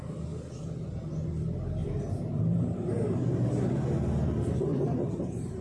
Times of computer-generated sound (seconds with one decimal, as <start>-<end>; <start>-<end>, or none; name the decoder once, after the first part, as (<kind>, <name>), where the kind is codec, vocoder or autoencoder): 1.8-3.5 (vocoder, BigVGAN v2); 4.7-5.6